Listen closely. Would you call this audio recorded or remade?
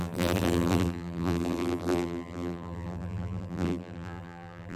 remade